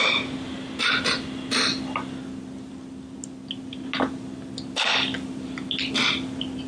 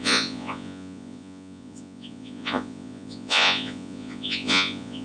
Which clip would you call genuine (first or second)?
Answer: first